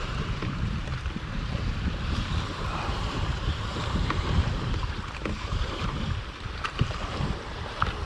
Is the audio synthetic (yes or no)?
yes